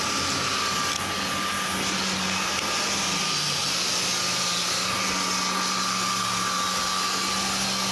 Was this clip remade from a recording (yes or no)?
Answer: no